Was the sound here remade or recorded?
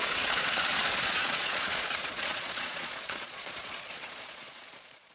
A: remade